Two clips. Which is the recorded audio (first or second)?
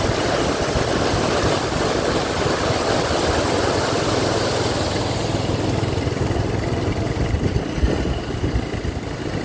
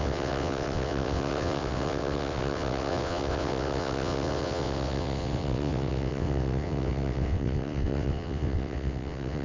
first